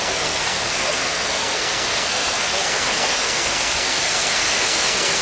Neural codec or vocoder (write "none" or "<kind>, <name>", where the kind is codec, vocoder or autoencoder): codec, SNAC